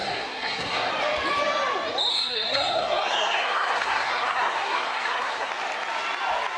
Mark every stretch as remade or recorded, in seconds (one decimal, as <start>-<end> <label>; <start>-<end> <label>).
0.0-0.9 remade; 0.9-2.1 recorded; 2.1-5.5 remade; 5.5-6.6 recorded

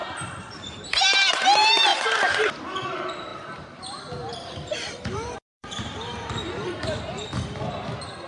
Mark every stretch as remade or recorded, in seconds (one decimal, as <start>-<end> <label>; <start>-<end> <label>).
0.0-1.3 remade; 1.3-1.9 recorded; 1.9-2.6 remade; 2.6-3.3 recorded; 3.3-3.8 remade; 3.8-4.2 recorded; 4.2-6.5 remade; 6.5-8.3 recorded

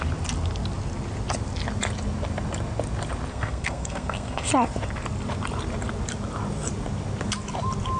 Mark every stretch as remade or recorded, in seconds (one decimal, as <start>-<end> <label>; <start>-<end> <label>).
0.0-3.3 recorded; 3.3-4.5 remade; 4.5-8.0 recorded

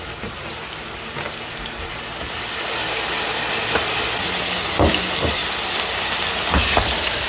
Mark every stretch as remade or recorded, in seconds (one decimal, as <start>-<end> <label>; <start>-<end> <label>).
0.0-7.3 recorded

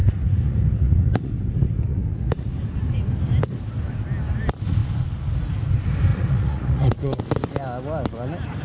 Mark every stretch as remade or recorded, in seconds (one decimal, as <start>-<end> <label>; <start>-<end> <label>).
0.0-1.3 remade; 1.3-1.9 recorded; 1.9-2.5 remade; 2.5-6.1 recorded; 6.1-7.2 remade; 7.2-8.6 recorded